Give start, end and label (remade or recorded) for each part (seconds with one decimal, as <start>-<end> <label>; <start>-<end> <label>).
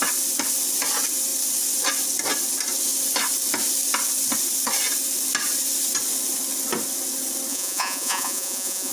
0.0-7.5 recorded; 7.5-8.9 remade